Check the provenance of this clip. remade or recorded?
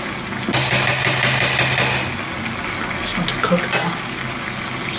recorded